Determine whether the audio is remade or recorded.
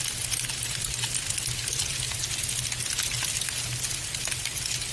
recorded